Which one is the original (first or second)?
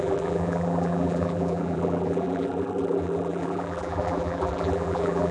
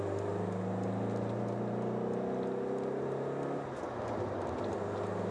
second